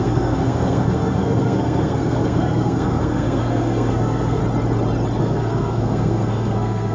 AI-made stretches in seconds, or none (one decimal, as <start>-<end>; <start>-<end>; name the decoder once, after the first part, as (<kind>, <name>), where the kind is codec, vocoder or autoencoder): 0.0-4.4 (codec, SNAC); 5.2-6.9